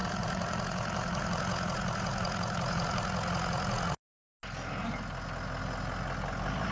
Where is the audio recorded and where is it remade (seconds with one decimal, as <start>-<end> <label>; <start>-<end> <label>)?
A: 0.0-4.0 remade; 4.0-6.7 recorded